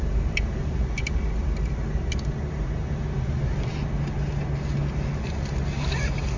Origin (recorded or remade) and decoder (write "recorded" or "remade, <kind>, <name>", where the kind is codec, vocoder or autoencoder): recorded